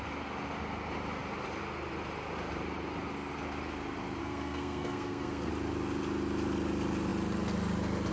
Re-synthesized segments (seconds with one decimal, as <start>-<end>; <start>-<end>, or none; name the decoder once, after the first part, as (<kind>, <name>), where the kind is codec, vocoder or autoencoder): 4.2-5.5 (codec, SNAC)